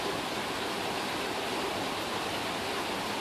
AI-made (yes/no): no